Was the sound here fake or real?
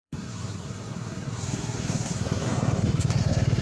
fake